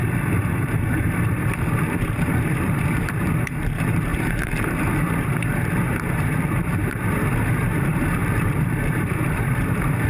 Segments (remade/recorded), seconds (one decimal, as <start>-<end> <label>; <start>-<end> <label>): 0.0-10.1 remade